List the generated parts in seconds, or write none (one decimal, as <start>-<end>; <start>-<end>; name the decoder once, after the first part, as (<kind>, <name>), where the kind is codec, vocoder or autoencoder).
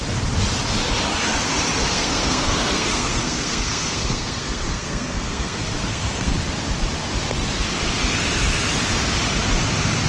1.8-6.3 (codec, SNAC)